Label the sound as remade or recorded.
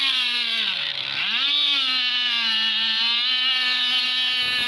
recorded